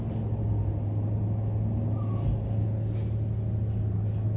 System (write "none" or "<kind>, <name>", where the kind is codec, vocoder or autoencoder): none